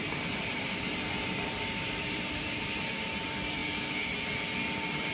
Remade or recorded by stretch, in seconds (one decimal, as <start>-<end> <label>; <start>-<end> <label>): 0.0-3.1 remade; 3.1-5.1 recorded